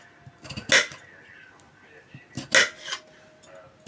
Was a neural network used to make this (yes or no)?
no